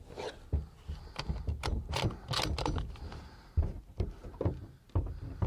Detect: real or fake real